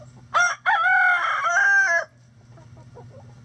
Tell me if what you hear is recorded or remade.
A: recorded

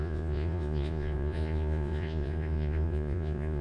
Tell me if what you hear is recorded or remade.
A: remade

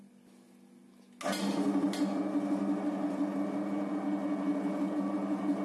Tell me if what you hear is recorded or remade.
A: recorded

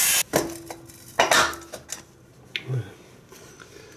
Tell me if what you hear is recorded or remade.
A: recorded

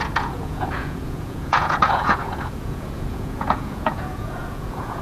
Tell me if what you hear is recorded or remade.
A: remade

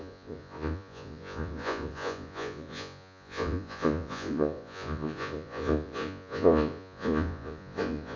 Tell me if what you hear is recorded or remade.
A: remade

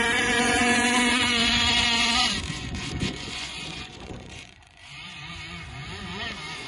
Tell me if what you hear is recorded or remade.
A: remade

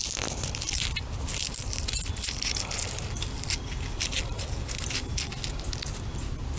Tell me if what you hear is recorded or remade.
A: recorded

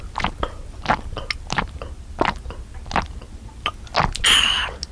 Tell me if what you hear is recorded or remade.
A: recorded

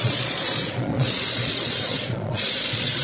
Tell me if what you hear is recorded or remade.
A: remade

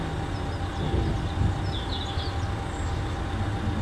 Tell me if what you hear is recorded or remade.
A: recorded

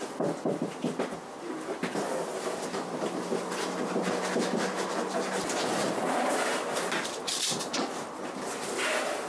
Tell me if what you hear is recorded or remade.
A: recorded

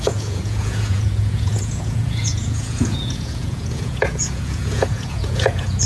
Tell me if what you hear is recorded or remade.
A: remade